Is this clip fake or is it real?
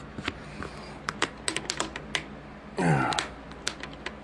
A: real